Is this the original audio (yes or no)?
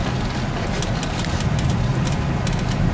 yes